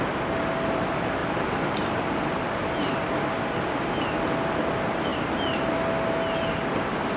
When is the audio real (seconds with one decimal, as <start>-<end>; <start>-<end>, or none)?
0.0-1.2; 2.0-7.2

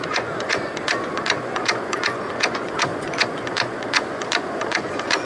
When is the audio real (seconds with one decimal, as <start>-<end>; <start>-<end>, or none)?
none

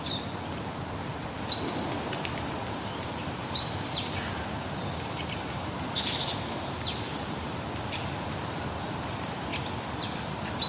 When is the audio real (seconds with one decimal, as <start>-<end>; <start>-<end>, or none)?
1.0-2.0; 9.5-10.7